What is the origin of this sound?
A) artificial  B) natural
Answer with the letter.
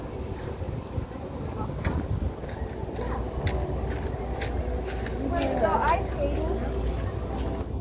B